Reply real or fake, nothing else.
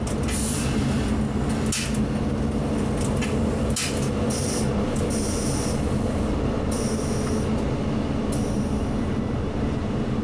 real